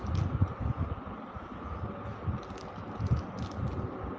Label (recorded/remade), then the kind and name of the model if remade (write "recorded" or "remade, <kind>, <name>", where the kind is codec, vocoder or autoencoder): recorded